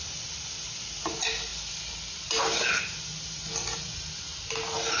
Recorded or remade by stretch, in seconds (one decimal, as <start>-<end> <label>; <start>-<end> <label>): 0.0-5.0 recorded